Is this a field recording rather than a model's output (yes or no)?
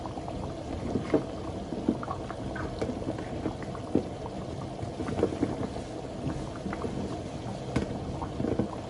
yes